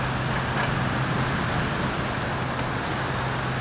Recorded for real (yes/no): yes